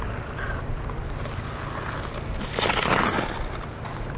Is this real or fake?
real